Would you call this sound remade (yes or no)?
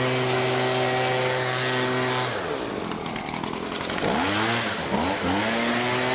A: no